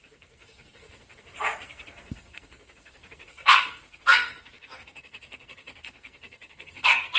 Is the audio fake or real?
fake